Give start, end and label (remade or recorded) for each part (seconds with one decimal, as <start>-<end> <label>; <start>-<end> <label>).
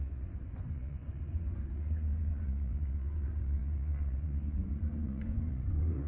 0.0-6.1 remade